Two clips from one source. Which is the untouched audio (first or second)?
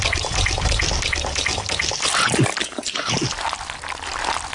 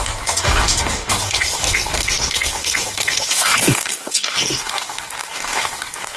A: first